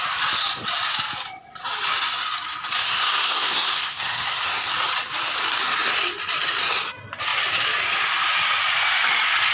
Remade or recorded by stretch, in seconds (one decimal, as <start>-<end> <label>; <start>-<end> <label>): 0.0-2.8 recorded; 2.8-4.7 remade; 4.7-9.5 recorded